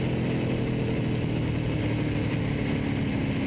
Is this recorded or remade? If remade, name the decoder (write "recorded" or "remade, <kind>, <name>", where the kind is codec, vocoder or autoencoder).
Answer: recorded